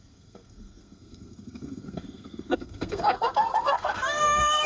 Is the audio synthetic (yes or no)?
yes